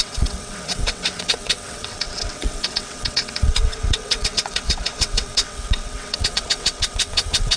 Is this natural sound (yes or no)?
no